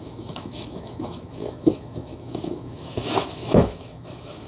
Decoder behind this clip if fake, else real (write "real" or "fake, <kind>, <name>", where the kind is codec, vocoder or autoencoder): fake, autoencoder, DAC-VAE